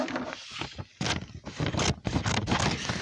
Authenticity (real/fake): real